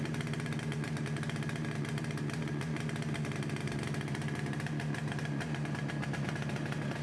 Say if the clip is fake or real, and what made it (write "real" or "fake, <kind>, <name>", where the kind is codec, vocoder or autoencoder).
real